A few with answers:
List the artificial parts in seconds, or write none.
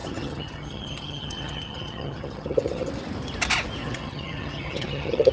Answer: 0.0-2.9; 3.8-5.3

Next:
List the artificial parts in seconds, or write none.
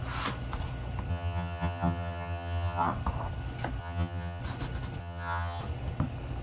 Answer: 1.1-2.9; 3.8-4.4; 5.0-5.6